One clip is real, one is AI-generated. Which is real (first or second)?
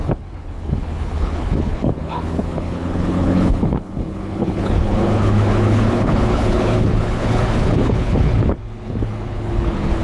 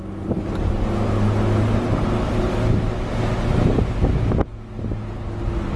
second